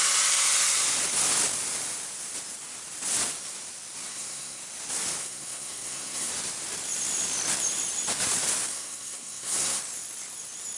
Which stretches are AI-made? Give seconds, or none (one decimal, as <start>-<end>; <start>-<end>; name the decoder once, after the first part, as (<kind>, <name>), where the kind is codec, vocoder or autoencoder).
4.1-4.6 (codec, SNAC); 5.2-6.3; 8.7-9.8